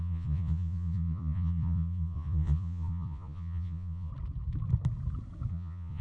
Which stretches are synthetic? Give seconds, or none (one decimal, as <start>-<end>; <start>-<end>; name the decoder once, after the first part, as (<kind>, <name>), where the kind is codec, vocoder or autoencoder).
0.0-4.1 (vocoder, Vocos); 5.5-6.0